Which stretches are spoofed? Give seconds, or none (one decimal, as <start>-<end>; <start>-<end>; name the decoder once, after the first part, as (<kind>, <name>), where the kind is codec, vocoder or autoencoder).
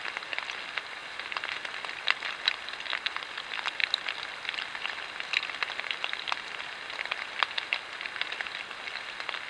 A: none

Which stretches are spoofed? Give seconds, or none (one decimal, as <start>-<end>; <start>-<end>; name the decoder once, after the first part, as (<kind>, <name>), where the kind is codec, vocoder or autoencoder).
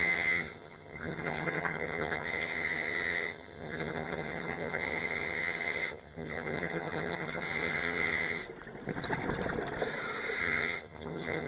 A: 0.0-8.4 (vocoder, HiFi-GAN); 10.4-11.5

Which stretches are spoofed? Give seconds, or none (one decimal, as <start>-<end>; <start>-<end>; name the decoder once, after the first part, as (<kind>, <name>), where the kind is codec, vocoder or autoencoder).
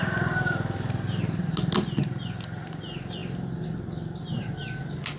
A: none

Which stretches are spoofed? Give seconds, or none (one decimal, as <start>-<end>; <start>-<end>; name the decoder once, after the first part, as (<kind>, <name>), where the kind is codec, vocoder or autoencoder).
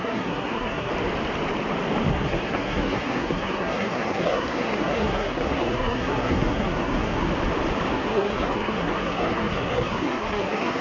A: 0.0-0.9 (codec, SNAC); 2.1-7.3; 7.9-10.8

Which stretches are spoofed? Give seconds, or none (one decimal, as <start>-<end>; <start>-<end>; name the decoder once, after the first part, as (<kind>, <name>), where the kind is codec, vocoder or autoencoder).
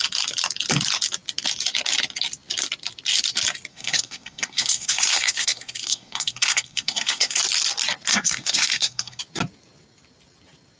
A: 3.7-7.4 (codec, SNAC); 8.1-9.2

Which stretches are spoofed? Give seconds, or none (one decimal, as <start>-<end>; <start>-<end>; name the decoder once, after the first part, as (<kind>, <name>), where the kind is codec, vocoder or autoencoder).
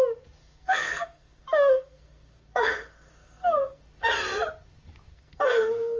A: 0.4-3.8 (codec, SNAC); 5.1-6.0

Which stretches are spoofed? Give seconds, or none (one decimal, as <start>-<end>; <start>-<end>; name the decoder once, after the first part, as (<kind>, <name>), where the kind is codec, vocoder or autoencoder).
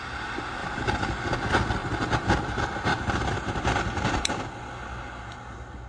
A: 0.6-1.3 (vocoder, BigVGAN v2); 2.9-4.6